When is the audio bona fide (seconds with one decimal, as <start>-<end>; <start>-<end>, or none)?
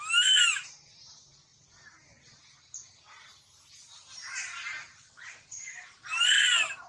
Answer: 0.0-6.9